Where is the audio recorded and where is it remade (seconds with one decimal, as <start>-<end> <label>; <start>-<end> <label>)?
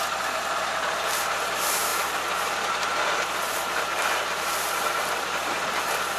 0.0-6.2 recorded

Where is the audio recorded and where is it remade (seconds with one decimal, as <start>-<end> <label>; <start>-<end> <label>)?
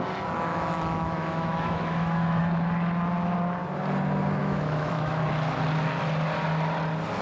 0.0-0.5 recorded; 0.5-2.4 remade; 2.4-4.4 recorded; 4.4-5.2 remade; 5.2-7.2 recorded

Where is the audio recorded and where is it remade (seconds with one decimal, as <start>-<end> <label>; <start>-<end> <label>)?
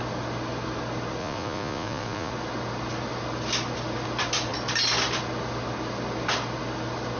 0.0-1.2 recorded; 1.2-2.3 remade; 2.3-7.2 recorded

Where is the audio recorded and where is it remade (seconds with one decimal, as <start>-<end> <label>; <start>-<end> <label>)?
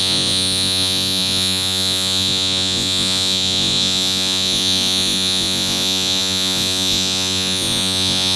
0.0-8.4 remade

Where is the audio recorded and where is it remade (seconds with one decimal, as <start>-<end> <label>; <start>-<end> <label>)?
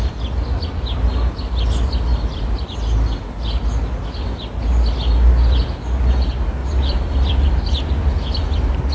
0.0-6.6 recorded; 6.6-8.4 remade; 8.4-8.9 recorded